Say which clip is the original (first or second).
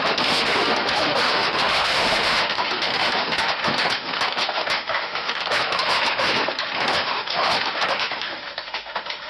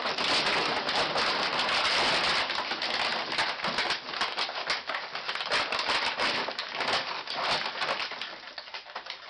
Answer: second